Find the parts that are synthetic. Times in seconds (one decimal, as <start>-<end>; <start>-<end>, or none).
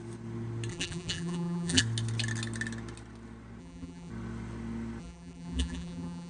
0.7-1.8; 3.6-4.1; 5.0-6.3